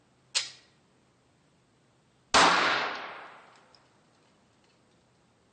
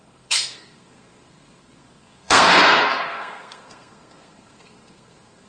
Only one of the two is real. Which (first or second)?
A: first